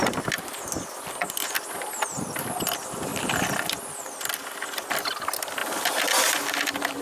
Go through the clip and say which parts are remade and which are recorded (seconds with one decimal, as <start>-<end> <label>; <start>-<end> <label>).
0.0-0.8 recorded; 0.8-3.1 remade; 3.1-3.8 recorded; 3.8-7.0 remade